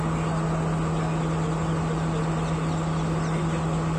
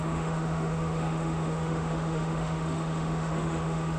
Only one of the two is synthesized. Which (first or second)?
second